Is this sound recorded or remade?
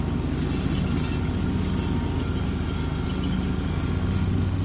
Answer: recorded